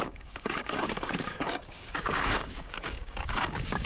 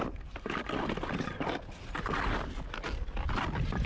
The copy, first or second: first